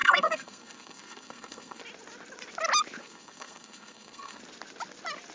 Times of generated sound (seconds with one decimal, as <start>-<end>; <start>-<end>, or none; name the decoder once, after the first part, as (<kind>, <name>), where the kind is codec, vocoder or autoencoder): 0.0-1.8 (codec, SNAC); 3.0-4.4